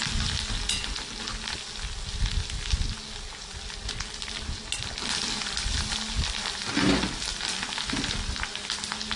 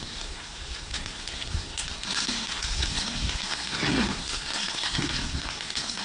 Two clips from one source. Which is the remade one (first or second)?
second